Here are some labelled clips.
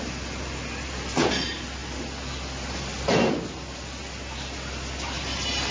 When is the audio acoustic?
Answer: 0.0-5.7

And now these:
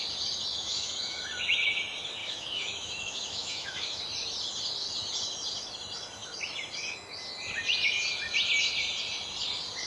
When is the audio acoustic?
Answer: 0.0-0.5; 1.2-2.2; 4.0-9.9

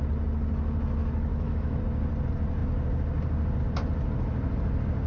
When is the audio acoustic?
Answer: 0.0-1.3; 1.8-5.1

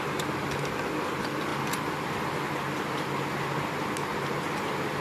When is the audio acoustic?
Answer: 0.0-5.0

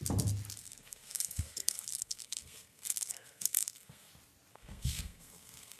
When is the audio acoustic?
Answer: 0.0-0.6; 4.1-4.5

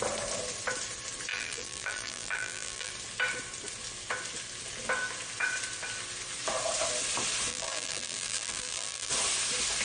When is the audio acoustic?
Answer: 0.0-1.3; 2.9-7.5; 9.1-9.8

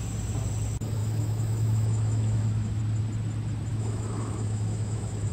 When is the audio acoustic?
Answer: 0.0-1.0; 2.8-3.7